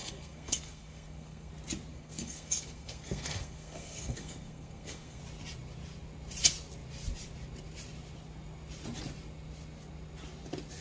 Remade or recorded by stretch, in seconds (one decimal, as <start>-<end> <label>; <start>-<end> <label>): 0.0-1.5 remade; 1.5-1.9 recorded; 1.9-5.2 remade; 5.2-10.8 recorded